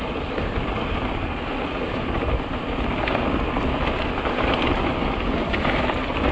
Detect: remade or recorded recorded